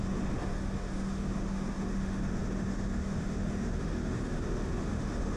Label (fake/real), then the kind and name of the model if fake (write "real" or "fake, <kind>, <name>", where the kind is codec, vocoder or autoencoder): fake, autoencoder, DAC-VAE